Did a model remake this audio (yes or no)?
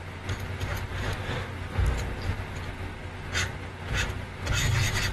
no